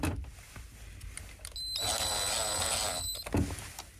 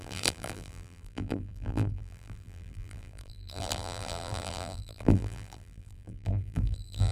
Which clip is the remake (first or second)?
second